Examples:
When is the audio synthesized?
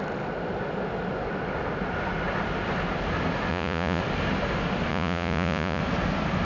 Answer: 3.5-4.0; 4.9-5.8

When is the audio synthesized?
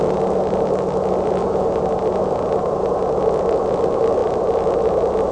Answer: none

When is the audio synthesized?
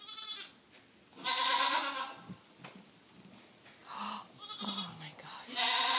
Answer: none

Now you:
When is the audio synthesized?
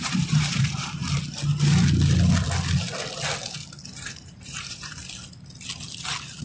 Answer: 0.0-1.0; 4.1-5.0